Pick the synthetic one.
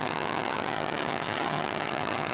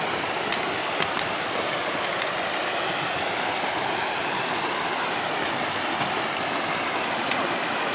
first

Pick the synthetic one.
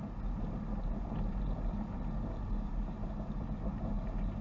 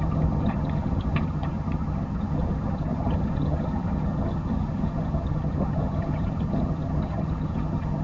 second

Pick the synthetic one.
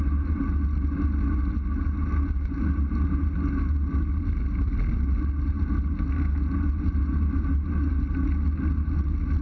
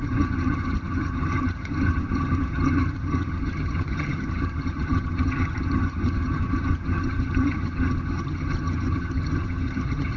second